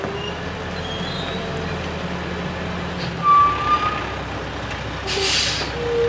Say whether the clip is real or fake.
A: real